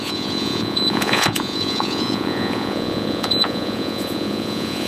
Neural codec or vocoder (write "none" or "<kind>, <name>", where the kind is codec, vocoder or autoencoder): vocoder, Vocos